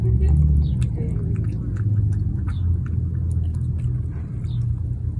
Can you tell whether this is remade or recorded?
recorded